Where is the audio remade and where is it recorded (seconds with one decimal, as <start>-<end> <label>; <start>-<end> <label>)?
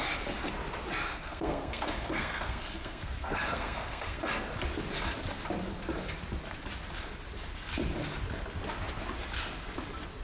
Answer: 0.0-1.1 recorded; 1.1-4.2 remade; 4.2-10.2 recorded